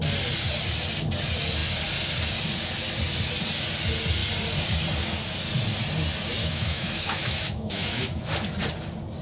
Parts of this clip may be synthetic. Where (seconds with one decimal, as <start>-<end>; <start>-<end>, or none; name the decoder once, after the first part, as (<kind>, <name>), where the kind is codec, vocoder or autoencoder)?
6.4-8.3 (autoencoder, DAC-VAE)